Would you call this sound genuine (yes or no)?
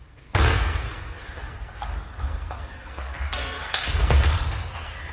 no